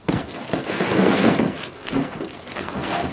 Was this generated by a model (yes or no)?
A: yes